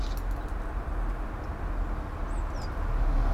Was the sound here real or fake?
real